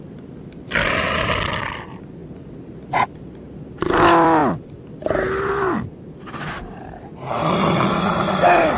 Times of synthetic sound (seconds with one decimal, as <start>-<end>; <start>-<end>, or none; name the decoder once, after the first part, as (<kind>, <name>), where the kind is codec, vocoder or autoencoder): 0.0-2.2 (vocoder, BigVGAN v2); 3.0-8.8